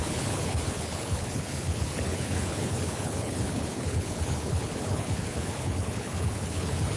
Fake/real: fake